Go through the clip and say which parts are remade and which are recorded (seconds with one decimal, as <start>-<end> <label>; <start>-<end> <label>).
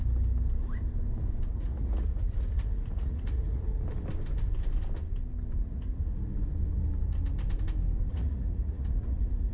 0.0-1.5 recorded; 1.5-3.8 remade; 3.8-5.6 recorded; 5.6-6.2 remade; 6.2-8.1 recorded; 8.1-9.5 remade